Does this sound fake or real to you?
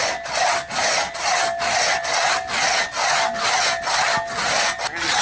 real